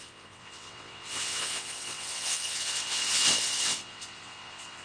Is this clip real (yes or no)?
no